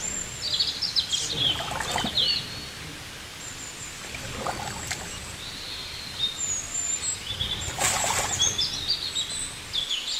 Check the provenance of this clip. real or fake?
real